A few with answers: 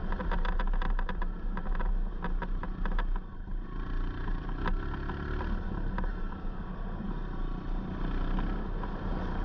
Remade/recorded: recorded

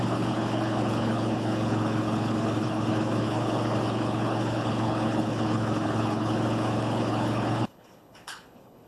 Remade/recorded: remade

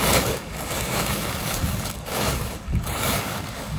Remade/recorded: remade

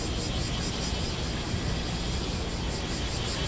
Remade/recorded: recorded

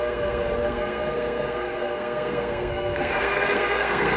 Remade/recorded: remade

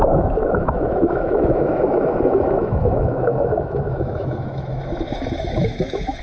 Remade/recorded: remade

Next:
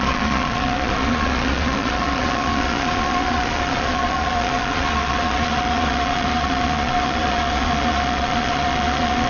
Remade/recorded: remade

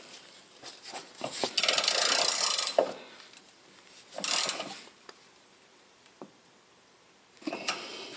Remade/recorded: recorded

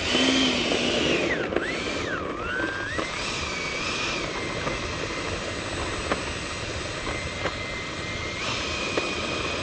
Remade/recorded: recorded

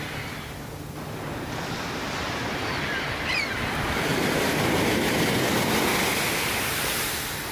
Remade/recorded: recorded